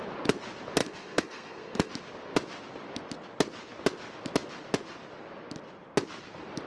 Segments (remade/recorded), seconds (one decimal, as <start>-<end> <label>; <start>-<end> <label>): 0.0-0.8 recorded; 0.8-1.9 remade; 1.9-6.7 recorded

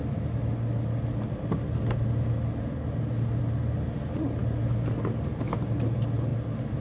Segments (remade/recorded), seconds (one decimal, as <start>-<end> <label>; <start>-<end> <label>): 0.0-6.8 recorded

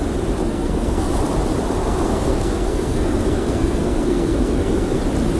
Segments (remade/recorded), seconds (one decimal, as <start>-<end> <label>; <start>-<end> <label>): 0.0-0.4 recorded; 0.4-1.1 remade; 1.1-1.8 recorded; 1.8-5.0 remade; 5.0-5.4 recorded

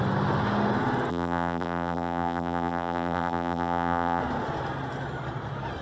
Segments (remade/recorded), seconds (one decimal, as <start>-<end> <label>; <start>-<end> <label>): 0.0-1.1 recorded; 1.1-4.2 remade; 4.2-5.8 recorded

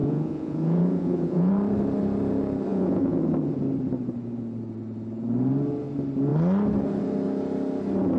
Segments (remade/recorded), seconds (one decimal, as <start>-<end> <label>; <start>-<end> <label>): 0.0-1.5 remade; 1.5-2.7 recorded; 2.7-3.3 remade; 3.3-8.2 recorded